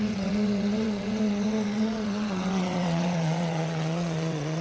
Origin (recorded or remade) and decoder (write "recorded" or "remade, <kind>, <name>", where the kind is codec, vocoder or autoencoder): remade, vocoder, WaveNeXt